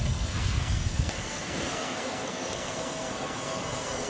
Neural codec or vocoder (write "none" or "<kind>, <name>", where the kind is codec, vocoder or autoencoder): codec, SNAC